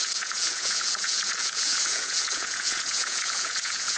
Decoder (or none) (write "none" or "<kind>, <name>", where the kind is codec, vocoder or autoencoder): vocoder, Vocos